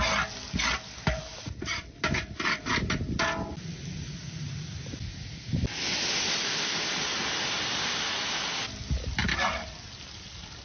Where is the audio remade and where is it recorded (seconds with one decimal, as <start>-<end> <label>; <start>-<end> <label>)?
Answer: 0.0-10.6 recorded

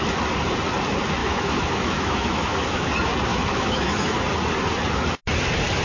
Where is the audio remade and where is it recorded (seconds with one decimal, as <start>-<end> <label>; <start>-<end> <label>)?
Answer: 0.0-1.2 recorded; 1.2-2.9 remade; 2.9-3.3 recorded; 3.3-4.2 remade; 4.2-5.8 recorded

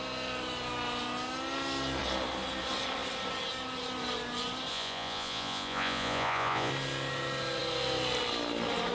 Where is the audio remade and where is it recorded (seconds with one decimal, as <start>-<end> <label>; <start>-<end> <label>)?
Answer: 0.0-4.7 recorded; 4.7-6.7 remade; 6.7-8.9 recorded

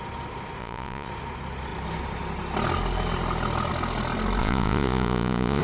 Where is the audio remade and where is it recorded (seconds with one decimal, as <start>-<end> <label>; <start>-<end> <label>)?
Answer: 0.0-0.6 recorded; 0.6-1.1 remade; 1.1-4.4 recorded; 4.4-5.6 remade

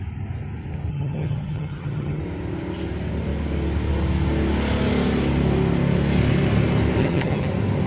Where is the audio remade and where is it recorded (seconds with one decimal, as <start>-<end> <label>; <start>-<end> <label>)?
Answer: 0.0-0.9 recorded; 0.9-2.2 remade; 2.2-7.0 recorded; 7.0-7.5 remade; 7.5-7.9 recorded

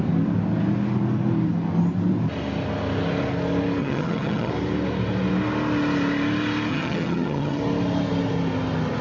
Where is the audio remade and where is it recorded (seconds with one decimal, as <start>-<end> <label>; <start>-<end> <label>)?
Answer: 0.0-3.8 recorded; 3.8-4.5 remade; 4.5-6.7 recorded; 6.7-7.6 remade; 7.6-9.0 recorded

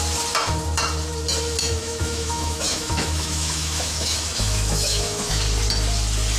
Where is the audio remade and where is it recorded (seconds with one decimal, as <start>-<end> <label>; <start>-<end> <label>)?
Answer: 0.0-1.6 recorded; 1.6-5.4 remade; 5.4-6.4 recorded